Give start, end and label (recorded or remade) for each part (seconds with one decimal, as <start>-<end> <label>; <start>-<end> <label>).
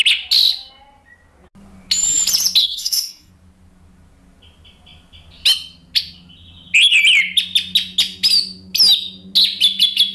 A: 0.0-2.6 recorded; 2.6-3.3 remade; 3.3-10.1 recorded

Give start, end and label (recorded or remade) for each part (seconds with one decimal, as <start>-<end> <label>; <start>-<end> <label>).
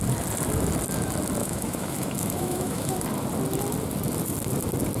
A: 0.0-1.4 recorded; 1.4-2.9 remade; 2.9-5.0 recorded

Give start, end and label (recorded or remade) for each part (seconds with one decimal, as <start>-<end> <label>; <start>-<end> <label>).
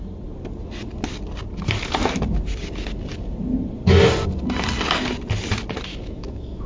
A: 0.0-5.9 recorded; 5.9-6.7 remade